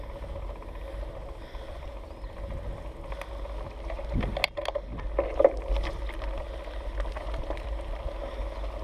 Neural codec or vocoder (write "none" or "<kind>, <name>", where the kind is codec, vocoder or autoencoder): none